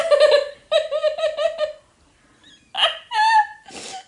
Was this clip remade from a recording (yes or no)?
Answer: no